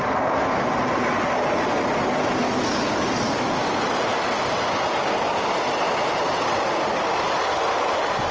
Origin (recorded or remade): recorded